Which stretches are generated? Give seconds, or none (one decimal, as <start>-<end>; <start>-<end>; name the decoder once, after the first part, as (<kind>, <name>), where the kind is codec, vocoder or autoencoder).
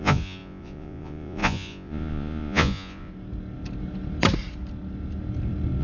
0.0-3.1 (vocoder, Vocos)